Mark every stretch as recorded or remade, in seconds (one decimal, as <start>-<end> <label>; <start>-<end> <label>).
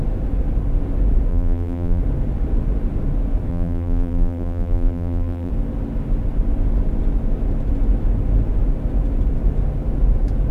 0.0-1.3 recorded; 1.3-2.0 remade; 2.0-3.5 recorded; 3.5-5.5 remade; 5.5-10.5 recorded